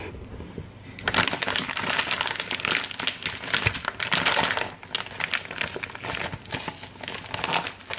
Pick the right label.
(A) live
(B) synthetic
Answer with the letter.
A